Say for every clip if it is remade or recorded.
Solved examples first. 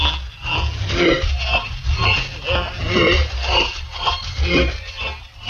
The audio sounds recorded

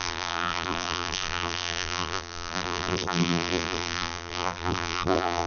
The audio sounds remade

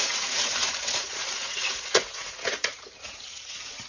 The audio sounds remade